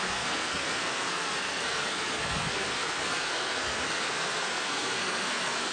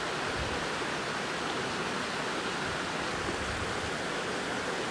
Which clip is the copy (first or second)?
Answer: first